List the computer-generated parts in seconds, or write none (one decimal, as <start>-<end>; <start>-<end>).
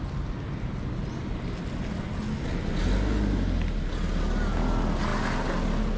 none